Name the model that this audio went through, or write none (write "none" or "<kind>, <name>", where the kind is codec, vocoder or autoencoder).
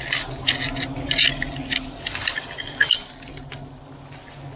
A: none